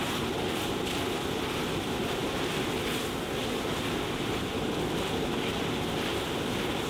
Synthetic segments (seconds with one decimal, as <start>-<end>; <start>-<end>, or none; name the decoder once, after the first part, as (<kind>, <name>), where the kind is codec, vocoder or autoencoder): none